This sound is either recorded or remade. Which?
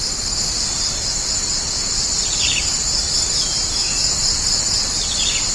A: recorded